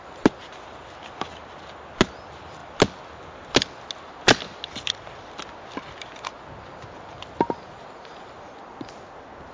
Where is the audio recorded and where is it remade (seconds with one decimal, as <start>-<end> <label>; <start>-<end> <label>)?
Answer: 0.0-9.5 recorded